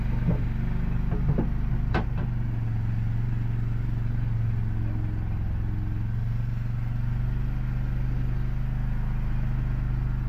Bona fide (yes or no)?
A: yes